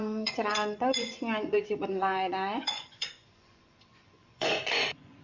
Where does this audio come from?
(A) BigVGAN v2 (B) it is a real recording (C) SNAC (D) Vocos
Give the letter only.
D